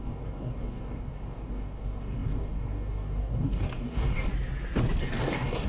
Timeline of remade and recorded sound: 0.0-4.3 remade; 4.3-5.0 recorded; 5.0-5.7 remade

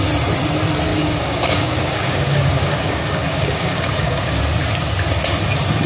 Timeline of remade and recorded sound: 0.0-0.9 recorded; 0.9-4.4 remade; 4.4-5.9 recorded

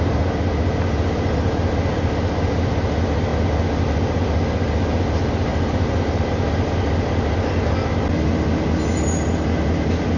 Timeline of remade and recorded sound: 0.0-5.5 recorded; 5.5-6.2 remade; 6.2-10.2 recorded

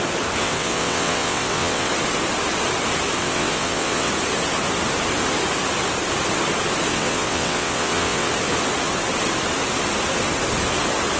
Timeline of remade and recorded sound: 0.0-0.4 recorded; 0.4-1.9 remade; 1.9-3.2 recorded; 3.2-4.1 remade; 4.1-6.9 recorded; 6.9-8.3 remade; 8.3-11.2 recorded

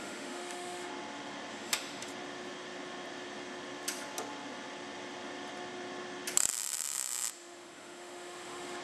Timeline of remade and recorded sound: 0.0-0.9 remade; 0.9-1.5 recorded; 1.5-2.1 remade; 2.1-7.3 recorded; 7.3-8.8 remade